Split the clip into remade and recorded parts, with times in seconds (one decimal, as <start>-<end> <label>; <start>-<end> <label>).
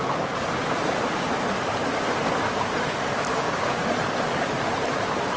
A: 0.0-3.3 recorded; 3.3-3.9 remade; 3.9-5.4 recorded